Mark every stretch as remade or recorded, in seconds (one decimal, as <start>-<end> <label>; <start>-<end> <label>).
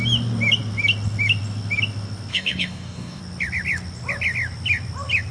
0.0-2.3 recorded; 2.3-3.2 remade; 3.2-5.3 recorded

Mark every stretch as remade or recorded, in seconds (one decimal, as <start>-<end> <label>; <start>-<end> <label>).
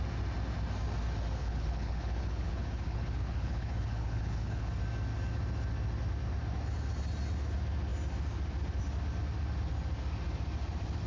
0.0-1.4 recorded; 1.4-4.7 remade; 4.7-11.1 recorded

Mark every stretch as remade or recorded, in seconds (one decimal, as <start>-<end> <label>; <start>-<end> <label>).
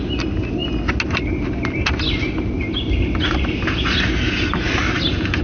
0.0-5.4 recorded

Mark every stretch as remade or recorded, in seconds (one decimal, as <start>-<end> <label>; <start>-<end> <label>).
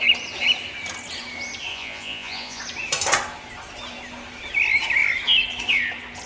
0.0-1.7 recorded; 1.7-2.6 remade; 2.6-6.3 recorded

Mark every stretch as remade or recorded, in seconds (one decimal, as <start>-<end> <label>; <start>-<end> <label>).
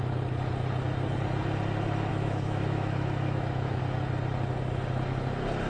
0.0-2.1 recorded; 2.1-3.8 remade; 3.8-5.7 recorded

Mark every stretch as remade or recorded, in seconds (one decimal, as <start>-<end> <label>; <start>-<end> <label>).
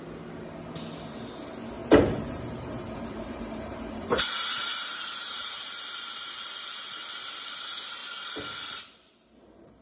0.0-1.8 recorded; 1.8-5.7 remade; 5.7-9.8 recorded